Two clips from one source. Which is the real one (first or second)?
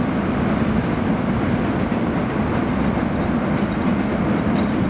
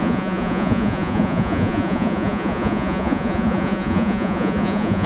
first